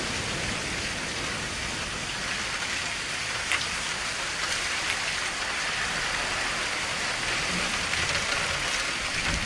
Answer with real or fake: real